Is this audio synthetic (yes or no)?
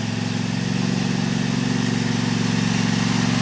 no